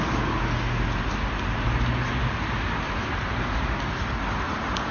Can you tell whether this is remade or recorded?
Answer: recorded